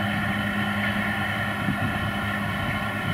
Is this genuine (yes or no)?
yes